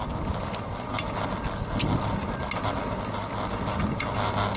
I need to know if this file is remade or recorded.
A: recorded